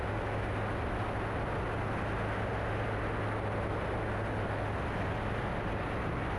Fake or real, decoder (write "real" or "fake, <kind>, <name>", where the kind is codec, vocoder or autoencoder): real